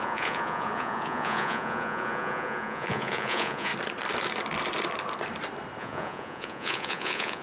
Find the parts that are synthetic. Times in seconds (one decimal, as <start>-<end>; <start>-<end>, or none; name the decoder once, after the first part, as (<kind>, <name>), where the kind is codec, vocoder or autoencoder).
0.0-3.7 (vocoder, Vocos); 5.8-7.4